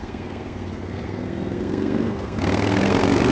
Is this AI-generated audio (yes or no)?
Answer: yes